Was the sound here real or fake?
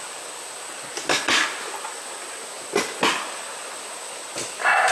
real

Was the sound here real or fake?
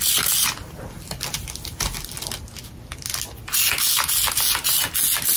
real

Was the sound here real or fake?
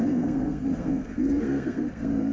fake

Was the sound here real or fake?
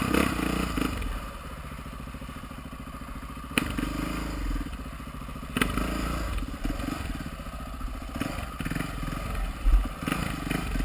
real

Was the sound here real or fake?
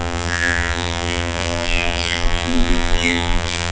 fake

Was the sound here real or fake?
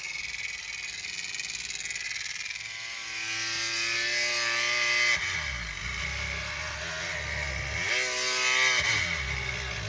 real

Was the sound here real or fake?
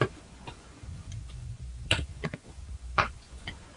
fake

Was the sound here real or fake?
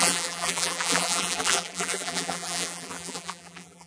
fake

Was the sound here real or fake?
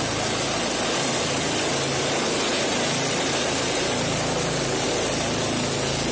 real